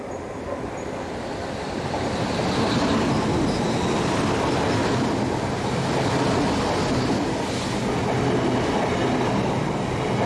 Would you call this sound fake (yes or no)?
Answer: no